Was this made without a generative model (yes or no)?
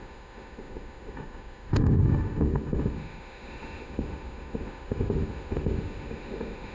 no